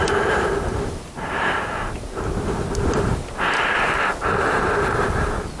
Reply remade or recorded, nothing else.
recorded